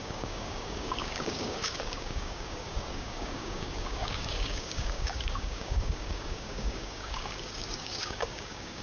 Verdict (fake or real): fake